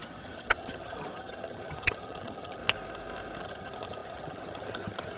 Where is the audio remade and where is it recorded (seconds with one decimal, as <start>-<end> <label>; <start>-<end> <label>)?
0.0-2.6 remade; 2.6-3.4 recorded; 3.4-5.2 remade

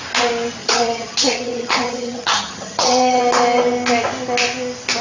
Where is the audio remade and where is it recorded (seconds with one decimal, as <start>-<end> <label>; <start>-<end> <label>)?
0.0-0.6 recorded; 0.6-3.2 remade; 3.2-5.0 recorded

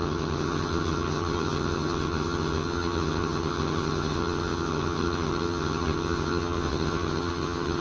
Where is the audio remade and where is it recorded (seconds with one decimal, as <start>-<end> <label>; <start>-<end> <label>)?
0.0-7.8 remade

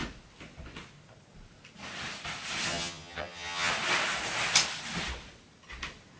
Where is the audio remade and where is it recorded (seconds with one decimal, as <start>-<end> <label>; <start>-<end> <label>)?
0.0-2.7 recorded; 2.7-3.7 remade; 3.7-6.2 recorded

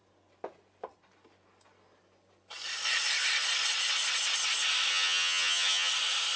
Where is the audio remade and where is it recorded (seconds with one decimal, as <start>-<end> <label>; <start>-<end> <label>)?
0.0-4.9 recorded; 4.9-5.9 remade; 5.9-6.4 recorded

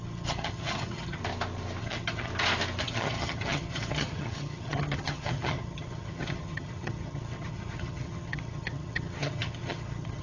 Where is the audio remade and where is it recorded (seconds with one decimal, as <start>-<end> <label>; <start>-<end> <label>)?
0.0-1.2 remade; 1.2-1.8 recorded; 1.8-2.3 remade; 2.3-2.8 recorded; 2.8-10.2 remade

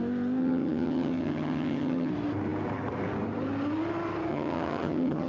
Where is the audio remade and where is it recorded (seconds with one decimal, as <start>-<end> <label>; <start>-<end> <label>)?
0.0-0.4 recorded; 0.4-2.1 remade; 2.1-4.3 recorded; 4.3-5.3 remade